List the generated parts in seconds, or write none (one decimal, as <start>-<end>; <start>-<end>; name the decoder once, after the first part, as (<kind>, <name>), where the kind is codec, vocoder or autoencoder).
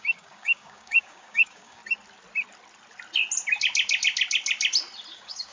0.0-1.8 (codec, DAC); 5.1-5.5